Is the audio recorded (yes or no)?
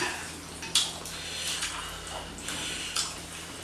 yes